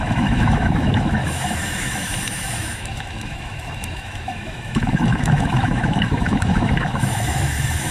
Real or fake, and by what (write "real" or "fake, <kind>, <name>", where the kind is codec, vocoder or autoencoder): fake, autoencoder, DAC-VAE